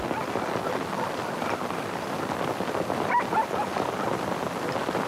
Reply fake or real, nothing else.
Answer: real